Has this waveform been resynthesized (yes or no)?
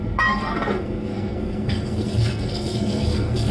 yes